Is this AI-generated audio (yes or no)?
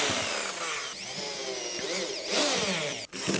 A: yes